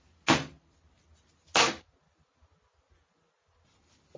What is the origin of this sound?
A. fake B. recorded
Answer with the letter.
B